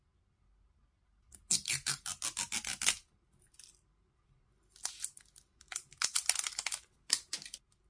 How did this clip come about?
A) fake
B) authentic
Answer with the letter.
B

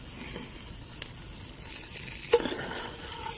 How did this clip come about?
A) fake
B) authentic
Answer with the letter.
B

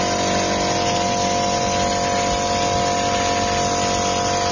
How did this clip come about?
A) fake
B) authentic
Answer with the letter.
B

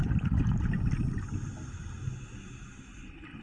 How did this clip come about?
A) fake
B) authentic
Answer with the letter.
B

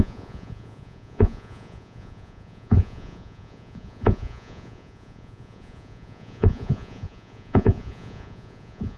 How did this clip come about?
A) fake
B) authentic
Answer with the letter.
A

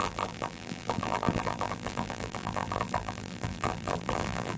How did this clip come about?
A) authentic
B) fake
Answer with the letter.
B